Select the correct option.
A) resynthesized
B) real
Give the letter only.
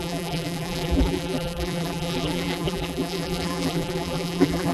A